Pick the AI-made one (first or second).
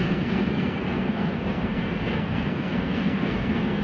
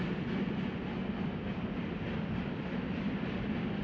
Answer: first